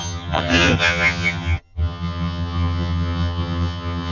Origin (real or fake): fake